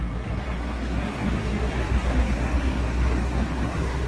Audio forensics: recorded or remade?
remade